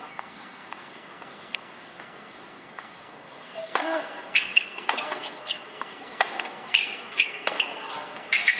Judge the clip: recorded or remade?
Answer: remade